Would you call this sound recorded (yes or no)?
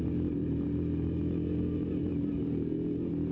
no